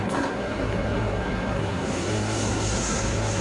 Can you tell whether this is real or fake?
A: fake